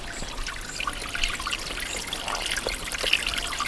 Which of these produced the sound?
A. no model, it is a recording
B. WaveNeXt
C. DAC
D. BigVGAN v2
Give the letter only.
A